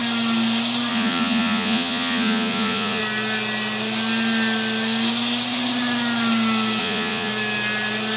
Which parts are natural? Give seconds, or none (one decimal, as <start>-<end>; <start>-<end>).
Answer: 0.0-0.9; 3.0-6.8; 7.3-8.2